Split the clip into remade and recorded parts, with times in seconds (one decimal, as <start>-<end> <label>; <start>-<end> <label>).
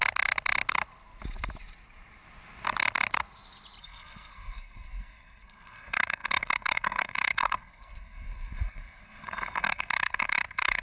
0.0-3.8 recorded; 3.8-10.8 remade